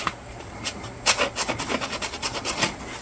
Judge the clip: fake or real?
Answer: real